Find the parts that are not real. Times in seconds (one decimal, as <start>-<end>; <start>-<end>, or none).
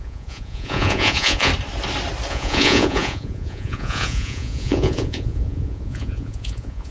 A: 0.0-1.5; 2.3-6.9